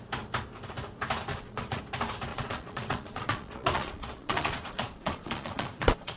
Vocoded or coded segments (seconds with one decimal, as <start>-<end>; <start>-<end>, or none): 1.3-1.8; 2.3-6.2